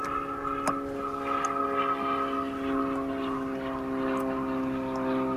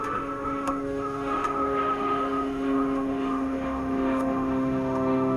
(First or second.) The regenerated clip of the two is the second